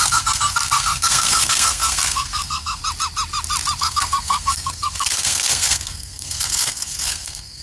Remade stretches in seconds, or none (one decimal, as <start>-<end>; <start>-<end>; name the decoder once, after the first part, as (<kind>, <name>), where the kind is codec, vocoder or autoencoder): 0.0-2.8 (codec, SNAC); 3.8-7.6